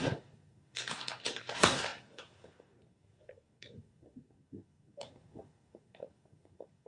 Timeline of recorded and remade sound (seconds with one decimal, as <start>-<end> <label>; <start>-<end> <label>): 0.0-6.9 remade